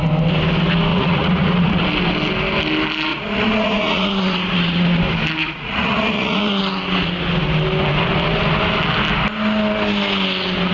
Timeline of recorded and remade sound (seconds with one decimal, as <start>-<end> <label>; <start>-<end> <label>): 0.0-0.9 recorded; 0.9-1.8 remade; 1.8-3.1 recorded; 3.1-5.0 remade; 5.0-5.4 recorded; 5.4-6.6 remade; 6.6-10.7 recorded